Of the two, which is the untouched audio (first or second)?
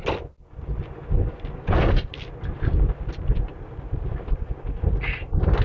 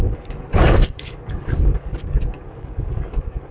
first